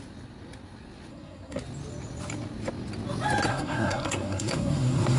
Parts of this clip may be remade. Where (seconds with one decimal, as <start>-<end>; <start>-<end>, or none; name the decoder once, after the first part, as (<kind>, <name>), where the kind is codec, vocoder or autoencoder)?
1.1-1.6 (codec, SNAC); 3.5-5.2